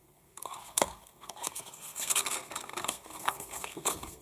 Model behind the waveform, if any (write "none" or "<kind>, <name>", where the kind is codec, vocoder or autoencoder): codec, SNAC